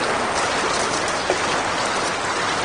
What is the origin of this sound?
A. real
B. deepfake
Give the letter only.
A